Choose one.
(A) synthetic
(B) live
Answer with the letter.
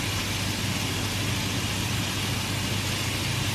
B